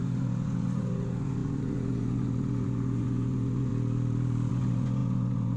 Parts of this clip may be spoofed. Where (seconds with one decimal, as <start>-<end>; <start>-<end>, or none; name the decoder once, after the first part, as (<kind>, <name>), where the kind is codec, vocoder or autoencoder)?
0.0-3.7 (vocoder, Vocos); 4.5-5.6